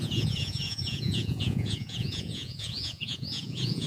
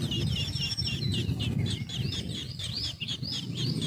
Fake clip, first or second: first